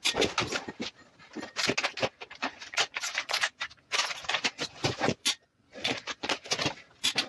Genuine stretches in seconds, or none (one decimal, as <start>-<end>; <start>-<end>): 0.0-2.4; 6.7-7.3